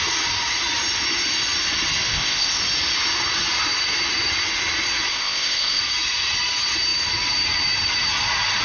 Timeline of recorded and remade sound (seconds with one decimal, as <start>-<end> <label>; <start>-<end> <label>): 0.0-2.1 recorded; 2.1-2.6 remade; 2.6-5.1 recorded; 5.1-5.8 remade; 5.8-8.6 recorded